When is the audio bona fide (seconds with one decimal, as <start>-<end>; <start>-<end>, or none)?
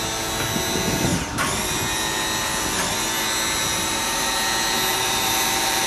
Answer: 0.0-3.7; 4.3-4.9